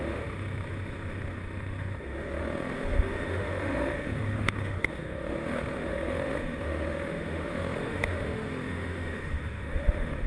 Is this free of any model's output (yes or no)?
no